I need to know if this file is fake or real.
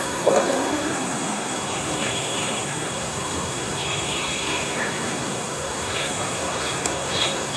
fake